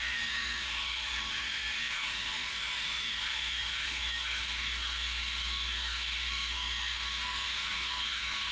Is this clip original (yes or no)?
no